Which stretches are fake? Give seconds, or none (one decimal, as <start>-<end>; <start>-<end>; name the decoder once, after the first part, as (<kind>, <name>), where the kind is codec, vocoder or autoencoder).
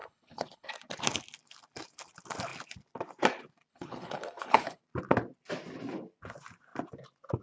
0.0-0.7 (codec, HILCodec); 3.7-4.8